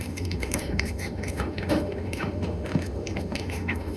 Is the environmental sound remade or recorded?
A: remade